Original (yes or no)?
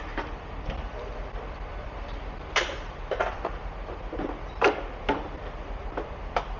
no